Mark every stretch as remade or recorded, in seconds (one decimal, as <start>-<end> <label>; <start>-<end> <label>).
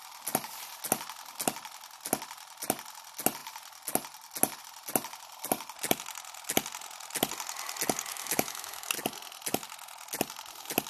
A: 0.0-8.1 recorded; 8.1-8.9 remade; 8.9-10.9 recorded